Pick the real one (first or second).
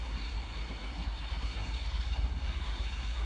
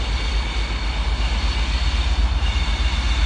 second